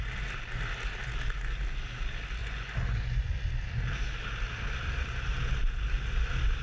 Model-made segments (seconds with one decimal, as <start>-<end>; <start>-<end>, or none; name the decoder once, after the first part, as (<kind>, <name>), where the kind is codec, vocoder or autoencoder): 2.4-3.3 (vocoder, Vocos)